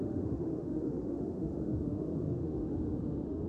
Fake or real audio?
fake